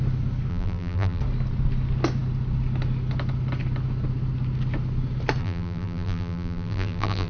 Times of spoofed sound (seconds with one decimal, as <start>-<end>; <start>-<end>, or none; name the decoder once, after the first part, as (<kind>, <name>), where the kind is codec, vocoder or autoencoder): 0.5-1.2 (vocoder, BigVGAN v2); 5.4-7.3